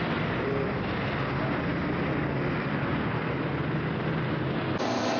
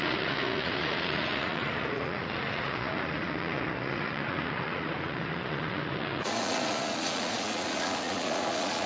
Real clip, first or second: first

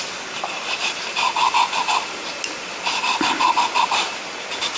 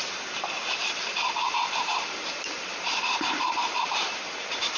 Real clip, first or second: first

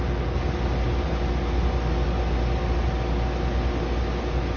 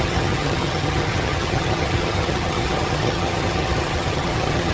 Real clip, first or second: first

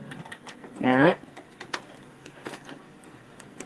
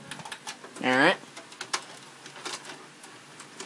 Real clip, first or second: second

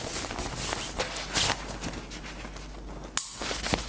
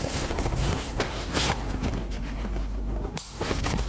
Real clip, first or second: first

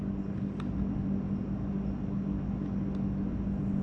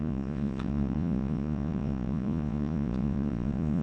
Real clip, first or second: first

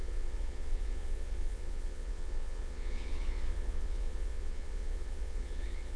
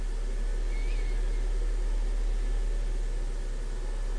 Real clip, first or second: second